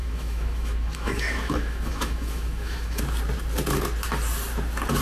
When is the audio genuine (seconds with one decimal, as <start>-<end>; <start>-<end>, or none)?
3.0-5.0